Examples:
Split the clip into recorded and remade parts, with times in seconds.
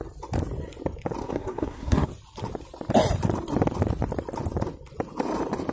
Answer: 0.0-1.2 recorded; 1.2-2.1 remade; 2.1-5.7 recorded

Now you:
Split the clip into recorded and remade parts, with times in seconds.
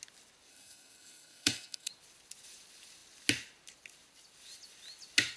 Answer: 0.0-0.5 recorded; 0.5-1.9 remade; 1.9-5.4 recorded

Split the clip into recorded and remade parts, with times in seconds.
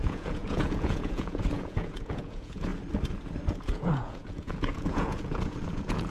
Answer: 0.0-2.7 remade; 2.7-3.6 recorded; 3.6-6.1 remade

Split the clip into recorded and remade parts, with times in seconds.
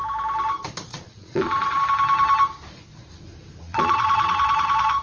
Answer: 0.0-0.9 recorded; 0.9-1.8 remade; 1.8-3.6 recorded; 3.6-5.0 remade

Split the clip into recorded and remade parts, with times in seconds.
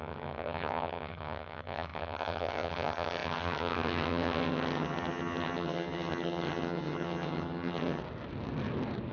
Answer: 0.0-8.0 remade; 8.0-9.1 recorded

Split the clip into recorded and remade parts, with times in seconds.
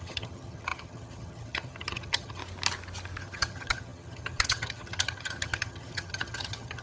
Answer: 0.0-2.4 remade; 2.4-3.2 recorded; 3.2-6.8 remade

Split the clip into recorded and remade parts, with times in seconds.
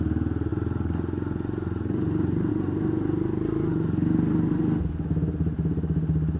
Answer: 0.0-6.4 recorded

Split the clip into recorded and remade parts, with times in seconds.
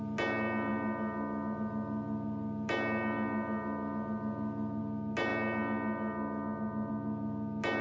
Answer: 0.0-7.8 recorded